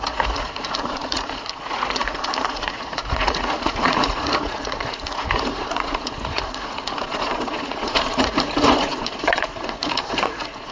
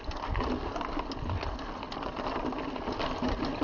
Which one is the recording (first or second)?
second